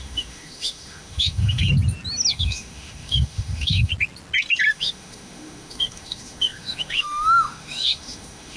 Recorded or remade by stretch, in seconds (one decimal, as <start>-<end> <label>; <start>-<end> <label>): 0.0-1.7 remade; 1.7-2.3 recorded; 2.3-3.9 remade; 3.9-4.7 recorded; 4.7-8.6 remade